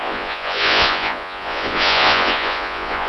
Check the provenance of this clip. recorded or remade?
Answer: remade